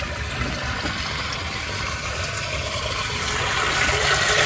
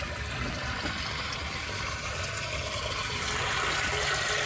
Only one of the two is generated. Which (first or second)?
first